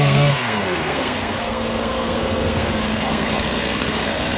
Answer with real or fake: fake